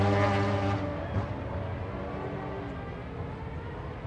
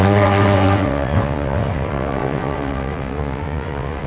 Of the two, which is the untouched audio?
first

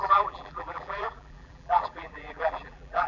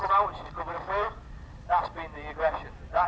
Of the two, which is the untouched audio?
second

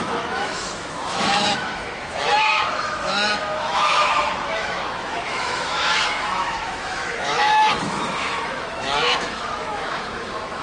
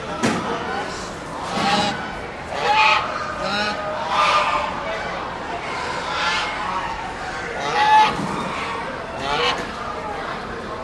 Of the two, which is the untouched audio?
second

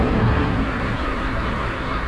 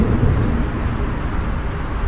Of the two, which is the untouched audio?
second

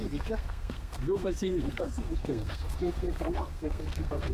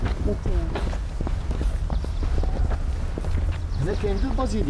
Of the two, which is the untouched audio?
second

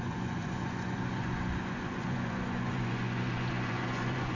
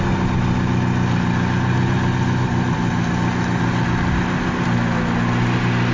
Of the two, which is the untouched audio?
second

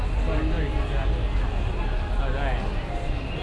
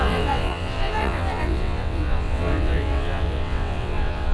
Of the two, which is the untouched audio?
first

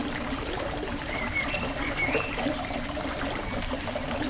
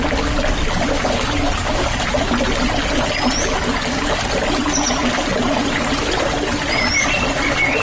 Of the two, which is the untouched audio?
second